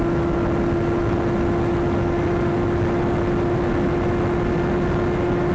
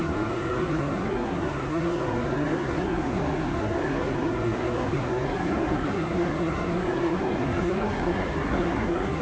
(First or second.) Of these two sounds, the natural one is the first